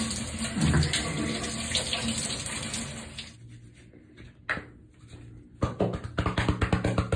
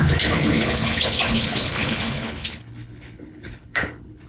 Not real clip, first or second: second